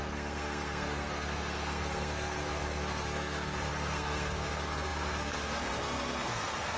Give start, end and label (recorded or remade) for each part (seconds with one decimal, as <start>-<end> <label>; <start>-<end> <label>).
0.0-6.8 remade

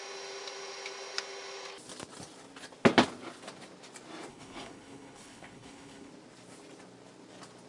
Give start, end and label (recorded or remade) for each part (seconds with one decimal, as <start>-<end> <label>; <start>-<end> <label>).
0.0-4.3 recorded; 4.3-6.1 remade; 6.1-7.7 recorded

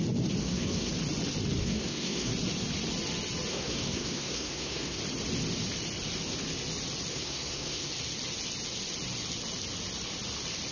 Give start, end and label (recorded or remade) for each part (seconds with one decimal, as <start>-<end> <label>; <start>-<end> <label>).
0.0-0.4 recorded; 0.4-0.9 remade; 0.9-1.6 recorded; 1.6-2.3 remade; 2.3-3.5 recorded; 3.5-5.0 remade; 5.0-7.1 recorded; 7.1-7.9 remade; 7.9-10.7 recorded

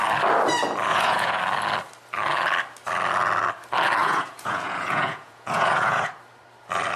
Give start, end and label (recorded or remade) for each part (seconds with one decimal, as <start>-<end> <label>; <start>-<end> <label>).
0.0-0.9 recorded; 0.9-1.4 remade; 1.4-4.0 recorded; 4.0-6.1 remade; 6.1-7.0 recorded

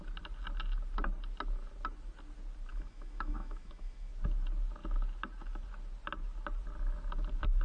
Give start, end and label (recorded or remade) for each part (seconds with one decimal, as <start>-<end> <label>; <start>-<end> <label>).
0.0-2.7 recorded; 2.7-4.1 remade; 4.1-7.6 recorded

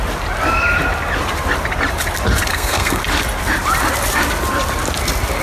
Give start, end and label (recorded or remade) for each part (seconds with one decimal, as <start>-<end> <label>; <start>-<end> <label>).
0.0-2.5 recorded; 2.5-3.0 remade; 3.0-5.4 recorded